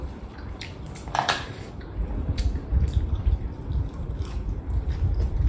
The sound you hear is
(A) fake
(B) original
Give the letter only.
A